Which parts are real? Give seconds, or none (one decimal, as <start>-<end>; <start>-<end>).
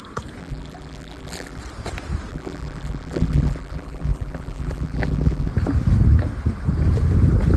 0.0-0.4; 1.6-2.3; 5.5-7.6